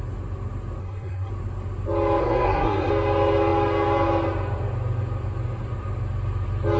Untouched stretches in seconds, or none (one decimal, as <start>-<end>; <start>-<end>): 0.0-0.8; 1.3-2.2; 2.9-6.8